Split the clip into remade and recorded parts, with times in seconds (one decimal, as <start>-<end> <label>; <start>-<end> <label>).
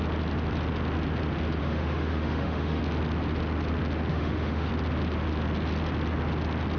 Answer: 0.0-1.6 recorded; 1.6-2.8 remade; 2.8-4.1 recorded; 4.1-4.7 remade; 4.7-6.8 recorded